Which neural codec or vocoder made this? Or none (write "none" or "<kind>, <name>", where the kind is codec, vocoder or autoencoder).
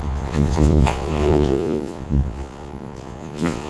vocoder, Vocos